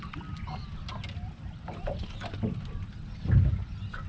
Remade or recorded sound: recorded